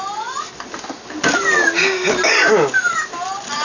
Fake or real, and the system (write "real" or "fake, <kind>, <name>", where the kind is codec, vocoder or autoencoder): real